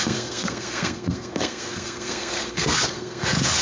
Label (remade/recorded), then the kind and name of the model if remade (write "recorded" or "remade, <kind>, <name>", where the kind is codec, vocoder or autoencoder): remade, codec, SNAC